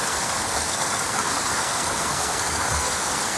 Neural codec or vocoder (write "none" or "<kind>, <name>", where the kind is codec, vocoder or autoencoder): codec, SNAC